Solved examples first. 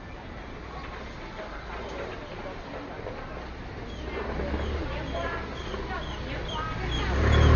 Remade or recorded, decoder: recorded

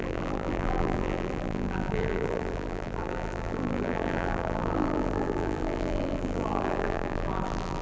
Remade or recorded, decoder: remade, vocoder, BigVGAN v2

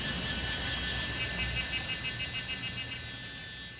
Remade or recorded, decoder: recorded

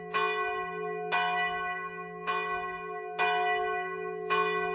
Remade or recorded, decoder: recorded